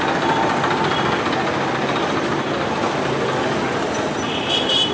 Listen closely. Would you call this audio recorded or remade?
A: recorded